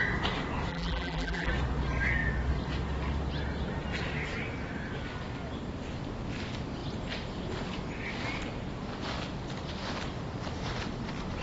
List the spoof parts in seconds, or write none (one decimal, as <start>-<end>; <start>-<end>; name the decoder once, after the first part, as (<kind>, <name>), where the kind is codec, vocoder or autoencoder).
0.7-1.5 (vocoder, BigVGAN v2)